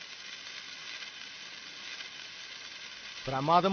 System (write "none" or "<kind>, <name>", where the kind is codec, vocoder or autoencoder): none